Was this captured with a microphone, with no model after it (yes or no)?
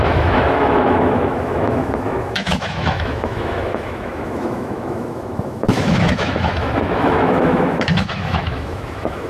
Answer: no